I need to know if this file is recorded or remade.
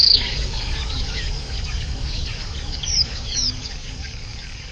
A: remade